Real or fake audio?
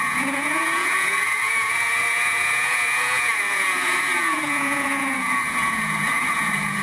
fake